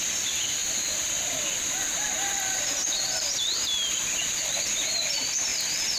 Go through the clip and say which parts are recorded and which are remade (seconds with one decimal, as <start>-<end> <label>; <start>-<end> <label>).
0.0-0.6 remade; 0.6-4.2 recorded; 4.2-5.5 remade; 5.5-6.0 recorded